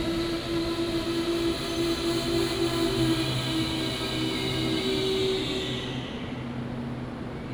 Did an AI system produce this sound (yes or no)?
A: no